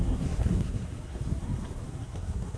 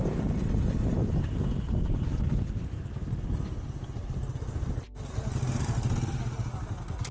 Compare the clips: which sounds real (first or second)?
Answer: second